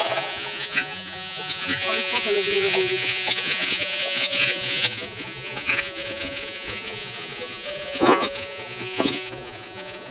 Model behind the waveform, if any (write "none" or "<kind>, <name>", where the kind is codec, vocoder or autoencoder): vocoder, Vocos